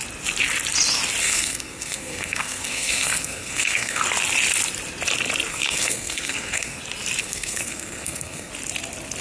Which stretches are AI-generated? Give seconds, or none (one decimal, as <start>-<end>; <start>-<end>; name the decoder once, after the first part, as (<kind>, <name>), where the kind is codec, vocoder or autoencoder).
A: 1.2-4.0 (codec, SNAC); 5.5-6.8; 7.2-8.5